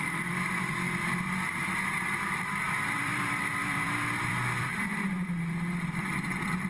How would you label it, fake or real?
fake